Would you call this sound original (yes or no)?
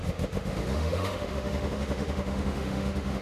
no